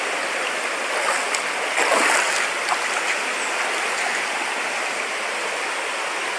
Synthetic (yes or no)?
no